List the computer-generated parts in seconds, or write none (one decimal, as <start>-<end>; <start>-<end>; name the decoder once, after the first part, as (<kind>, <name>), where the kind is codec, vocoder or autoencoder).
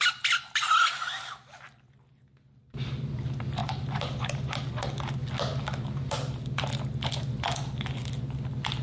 2.6-3.1 (vocoder, BigVGAN v2); 3.6-4.7